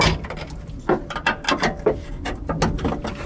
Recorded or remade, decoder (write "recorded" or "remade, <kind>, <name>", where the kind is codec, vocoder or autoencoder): recorded